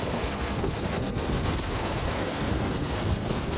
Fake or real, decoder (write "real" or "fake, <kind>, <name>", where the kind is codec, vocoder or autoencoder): fake, codec, SNAC